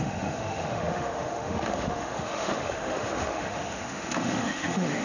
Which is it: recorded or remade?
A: remade